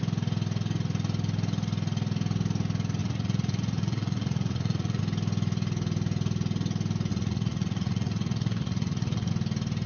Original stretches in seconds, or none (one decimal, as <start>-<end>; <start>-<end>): 0.0-3.0; 5.0-7.1; 9.3-9.9